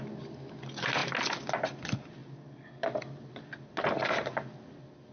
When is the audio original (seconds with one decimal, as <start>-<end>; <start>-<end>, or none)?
0.0-5.1